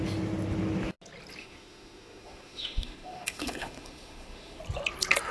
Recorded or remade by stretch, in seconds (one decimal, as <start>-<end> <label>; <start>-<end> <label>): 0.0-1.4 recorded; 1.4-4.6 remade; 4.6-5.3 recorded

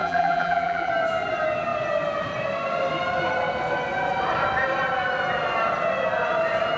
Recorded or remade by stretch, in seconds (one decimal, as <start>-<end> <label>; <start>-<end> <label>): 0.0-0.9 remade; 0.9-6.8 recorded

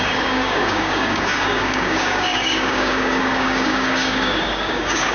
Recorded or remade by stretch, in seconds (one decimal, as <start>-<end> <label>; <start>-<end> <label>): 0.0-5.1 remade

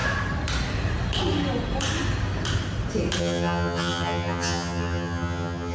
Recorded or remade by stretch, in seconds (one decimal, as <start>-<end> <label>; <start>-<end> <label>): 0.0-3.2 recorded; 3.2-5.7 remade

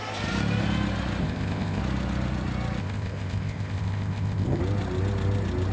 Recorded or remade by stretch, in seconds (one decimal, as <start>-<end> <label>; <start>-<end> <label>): 0.0-1.2 recorded; 1.2-1.8 remade; 1.8-2.8 recorded; 2.8-4.6 remade; 4.6-5.7 recorded

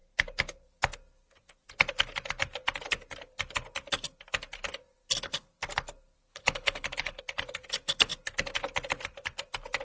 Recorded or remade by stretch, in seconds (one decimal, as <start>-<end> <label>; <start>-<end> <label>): 0.0-6.3 recorded; 6.3-7.2 remade; 7.2-9.8 recorded